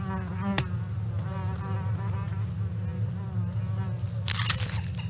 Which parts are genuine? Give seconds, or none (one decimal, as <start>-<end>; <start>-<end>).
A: 0.0-5.1